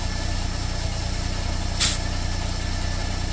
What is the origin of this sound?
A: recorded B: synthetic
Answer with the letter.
A